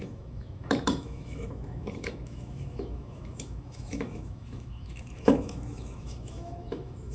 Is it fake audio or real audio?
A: fake